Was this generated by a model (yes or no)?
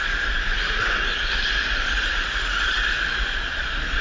no